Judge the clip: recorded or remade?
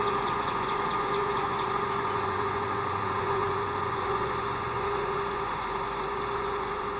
remade